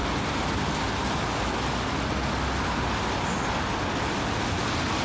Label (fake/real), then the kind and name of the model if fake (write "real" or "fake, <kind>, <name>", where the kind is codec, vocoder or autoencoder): real